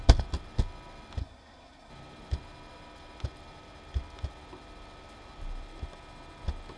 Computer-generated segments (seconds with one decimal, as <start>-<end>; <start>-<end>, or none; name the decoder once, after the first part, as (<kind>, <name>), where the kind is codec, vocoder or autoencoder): 1.2-1.9 (codec, SNAC)